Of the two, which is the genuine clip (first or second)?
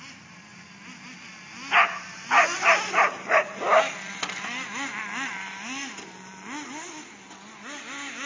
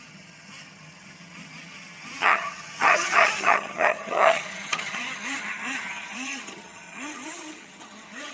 first